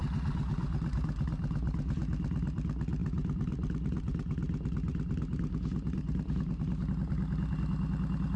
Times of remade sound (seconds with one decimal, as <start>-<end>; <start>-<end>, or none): 0.0-2.5; 3.0-6.9